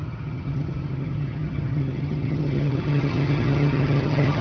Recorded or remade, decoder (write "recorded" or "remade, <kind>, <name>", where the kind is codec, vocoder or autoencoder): remade, vocoder, HiFi-GAN